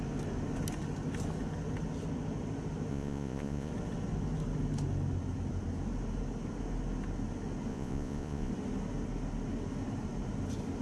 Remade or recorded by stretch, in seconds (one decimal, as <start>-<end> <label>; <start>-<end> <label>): 0.0-2.9 recorded; 2.9-3.7 remade; 3.7-7.7 recorded; 7.7-8.5 remade; 8.5-10.8 recorded